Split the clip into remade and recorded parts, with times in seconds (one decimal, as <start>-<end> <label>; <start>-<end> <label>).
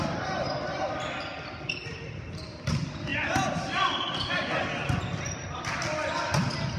0.0-6.8 recorded